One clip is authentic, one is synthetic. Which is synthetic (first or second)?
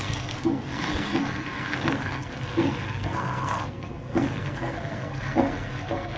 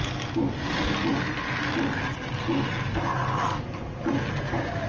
first